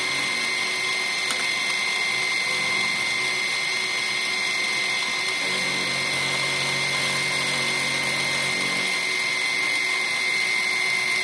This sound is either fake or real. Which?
real